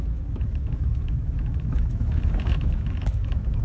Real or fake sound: fake